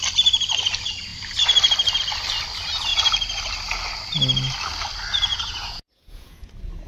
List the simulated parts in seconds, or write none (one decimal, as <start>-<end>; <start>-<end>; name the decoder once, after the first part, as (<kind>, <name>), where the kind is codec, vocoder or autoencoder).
5.3-6.5 (vocoder, Vocos)

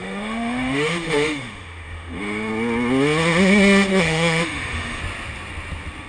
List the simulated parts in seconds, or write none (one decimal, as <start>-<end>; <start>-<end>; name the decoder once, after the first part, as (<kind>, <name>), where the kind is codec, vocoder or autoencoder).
0.0-2.5 (autoencoder, DAC-VAE); 3.9-5.0

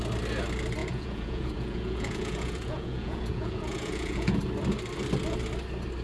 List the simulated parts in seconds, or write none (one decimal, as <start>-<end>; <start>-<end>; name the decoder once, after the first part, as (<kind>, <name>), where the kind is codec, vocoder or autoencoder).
0.8-4.4 (vocoder, Vocos)

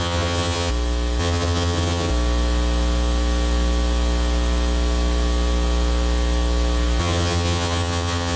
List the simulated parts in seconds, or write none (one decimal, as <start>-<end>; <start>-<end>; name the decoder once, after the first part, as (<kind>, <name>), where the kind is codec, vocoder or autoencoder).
0.0-0.7 (vocoder, HiFi-GAN); 1.2-2.1; 7.0-8.4